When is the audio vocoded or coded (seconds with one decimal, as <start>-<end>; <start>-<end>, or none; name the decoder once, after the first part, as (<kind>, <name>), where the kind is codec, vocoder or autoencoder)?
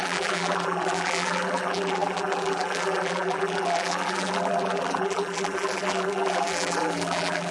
0.0-7.5 (vocoder, BigVGAN v2)